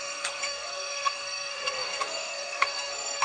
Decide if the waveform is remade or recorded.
remade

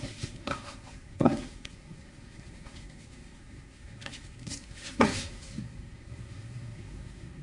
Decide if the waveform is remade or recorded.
remade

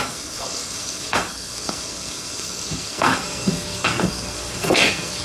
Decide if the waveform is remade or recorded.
remade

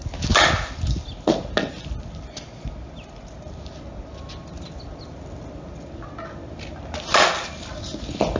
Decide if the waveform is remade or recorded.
recorded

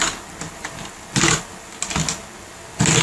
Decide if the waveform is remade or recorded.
recorded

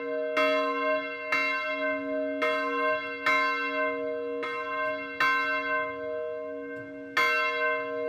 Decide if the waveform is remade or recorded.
recorded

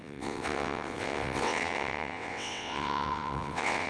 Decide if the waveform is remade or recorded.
remade